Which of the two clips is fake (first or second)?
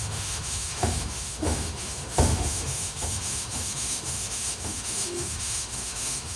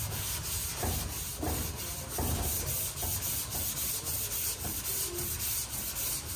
first